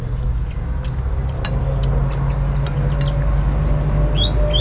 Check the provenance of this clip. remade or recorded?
recorded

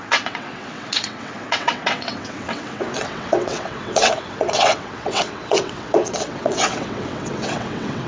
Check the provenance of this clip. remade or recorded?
remade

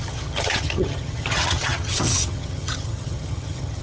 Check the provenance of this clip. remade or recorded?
remade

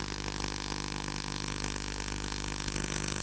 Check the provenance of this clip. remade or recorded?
remade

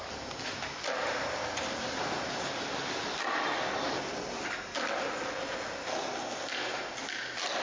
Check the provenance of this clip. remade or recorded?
recorded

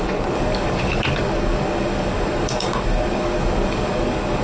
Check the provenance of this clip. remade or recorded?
remade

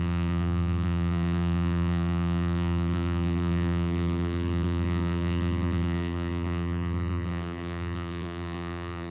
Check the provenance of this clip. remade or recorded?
remade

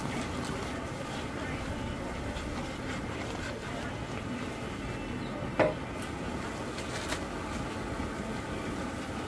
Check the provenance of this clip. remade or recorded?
recorded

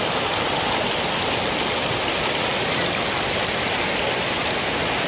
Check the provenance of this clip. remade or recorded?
recorded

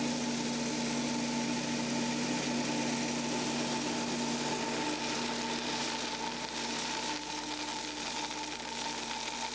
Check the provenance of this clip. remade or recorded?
recorded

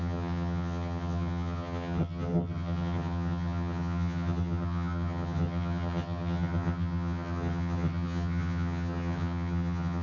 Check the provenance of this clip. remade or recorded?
remade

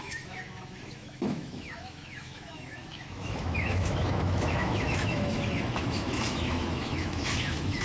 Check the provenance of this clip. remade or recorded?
remade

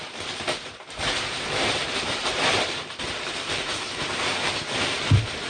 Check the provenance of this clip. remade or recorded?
remade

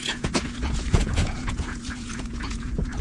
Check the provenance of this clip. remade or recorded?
remade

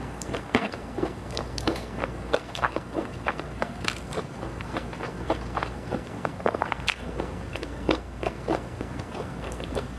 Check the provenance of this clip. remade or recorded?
remade